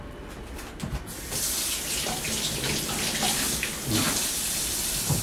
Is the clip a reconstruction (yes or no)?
no